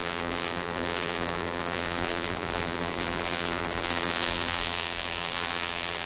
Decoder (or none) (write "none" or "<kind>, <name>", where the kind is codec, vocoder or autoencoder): vocoder, BigVGAN v2